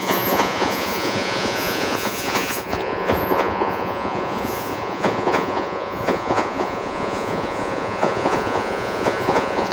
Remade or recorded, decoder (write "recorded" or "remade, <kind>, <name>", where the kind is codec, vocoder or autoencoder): remade, vocoder, Vocos